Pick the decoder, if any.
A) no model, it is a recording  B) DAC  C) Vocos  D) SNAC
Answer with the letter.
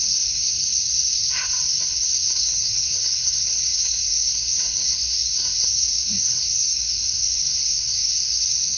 D